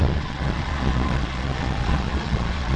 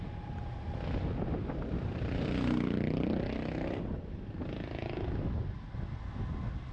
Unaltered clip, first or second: second